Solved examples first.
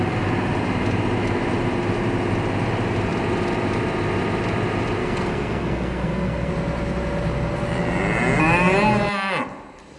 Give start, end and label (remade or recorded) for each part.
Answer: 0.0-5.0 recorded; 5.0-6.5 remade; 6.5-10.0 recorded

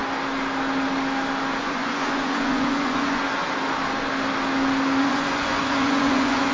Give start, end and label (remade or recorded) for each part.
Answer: 0.0-1.6 recorded; 1.6-3.4 remade; 3.4-5.0 recorded; 5.0-6.5 remade

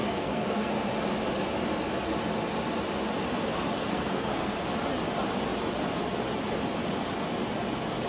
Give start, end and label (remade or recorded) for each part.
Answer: 0.0-0.7 remade; 0.7-3.8 recorded; 3.8-4.6 remade; 4.6-8.1 recorded

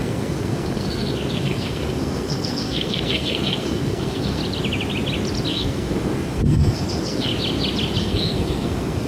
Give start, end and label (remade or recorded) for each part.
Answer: 0.0-4.4 remade; 4.4-5.5 recorded; 5.5-7.3 remade; 7.3-8.0 recorded; 8.0-9.1 remade

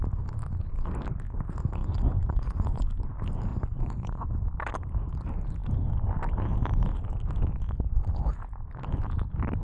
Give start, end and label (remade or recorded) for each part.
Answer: 0.0-1.8 recorded; 1.8-2.9 remade; 2.9-3.5 recorded; 3.5-4.3 remade; 4.3-9.6 recorded

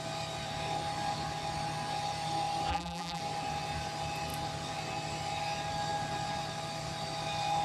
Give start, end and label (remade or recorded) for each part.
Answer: 0.0-2.7 recorded; 2.7-3.2 remade; 3.2-7.6 recorded

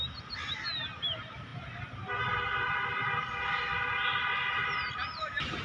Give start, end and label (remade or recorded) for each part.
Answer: 0.0-5.6 recorded